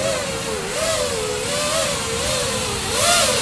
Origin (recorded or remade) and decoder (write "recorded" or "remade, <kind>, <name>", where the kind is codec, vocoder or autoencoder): recorded